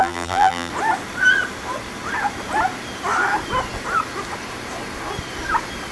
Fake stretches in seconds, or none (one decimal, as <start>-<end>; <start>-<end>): 0.0-0.7